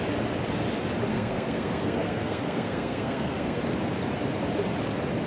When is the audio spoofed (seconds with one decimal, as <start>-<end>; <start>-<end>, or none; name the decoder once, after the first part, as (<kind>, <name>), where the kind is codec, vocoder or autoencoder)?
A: 1.1-3.6 (codec, SNAC)